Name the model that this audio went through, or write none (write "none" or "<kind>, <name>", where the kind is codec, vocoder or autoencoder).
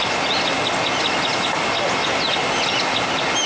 none